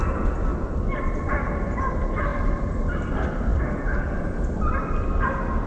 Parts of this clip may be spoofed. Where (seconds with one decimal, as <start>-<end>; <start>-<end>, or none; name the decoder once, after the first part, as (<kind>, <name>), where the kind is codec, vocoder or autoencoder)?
none

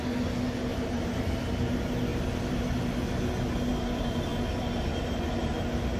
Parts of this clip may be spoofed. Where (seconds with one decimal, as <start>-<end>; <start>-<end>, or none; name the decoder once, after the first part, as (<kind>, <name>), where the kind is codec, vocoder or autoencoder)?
0.7-1.2 (vocoder, BigVGAN v2)

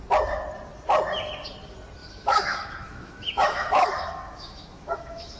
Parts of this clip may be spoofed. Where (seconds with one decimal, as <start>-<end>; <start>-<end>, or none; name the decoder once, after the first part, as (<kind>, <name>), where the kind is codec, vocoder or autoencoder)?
2.0-5.4 (autoencoder, DAC-VAE)